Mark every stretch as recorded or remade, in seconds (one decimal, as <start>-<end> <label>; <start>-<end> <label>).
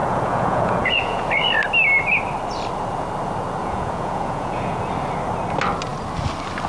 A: 0.0-1.3 remade; 1.3-3.6 recorded; 3.6-4.8 remade; 4.8-6.7 recorded